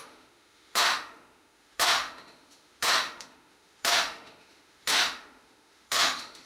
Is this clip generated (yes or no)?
yes